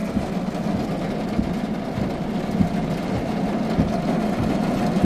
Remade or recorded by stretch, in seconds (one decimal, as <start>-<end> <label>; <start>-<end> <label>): 0.0-5.0 recorded